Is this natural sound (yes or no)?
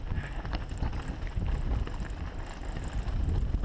yes